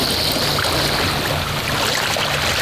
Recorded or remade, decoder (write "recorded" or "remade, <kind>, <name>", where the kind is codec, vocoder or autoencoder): recorded